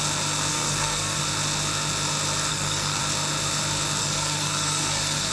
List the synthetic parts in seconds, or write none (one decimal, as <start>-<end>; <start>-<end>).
0.5-1.2; 2.5-3.0; 4.0-5.3